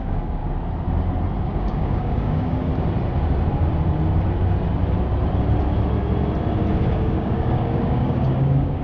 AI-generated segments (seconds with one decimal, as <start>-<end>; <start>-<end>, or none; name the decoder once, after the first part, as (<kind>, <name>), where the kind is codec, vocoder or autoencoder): 0.0-0.4 (codec, DAC); 1.4-2.7; 6.9-8.8